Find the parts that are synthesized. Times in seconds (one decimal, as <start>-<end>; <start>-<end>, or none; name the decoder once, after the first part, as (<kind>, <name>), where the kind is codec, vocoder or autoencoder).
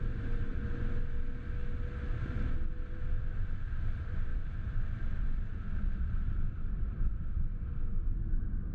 4.3-7.1 (vocoder, BigVGAN v2)